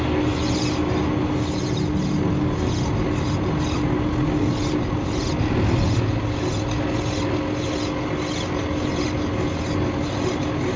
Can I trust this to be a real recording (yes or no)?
yes